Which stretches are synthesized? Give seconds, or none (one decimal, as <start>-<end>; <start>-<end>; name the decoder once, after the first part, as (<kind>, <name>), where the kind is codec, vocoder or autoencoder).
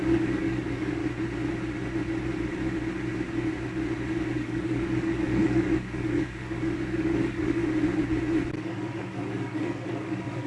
0.0-1.0 (codec, DAC); 4.2-7.6; 8.5-10.5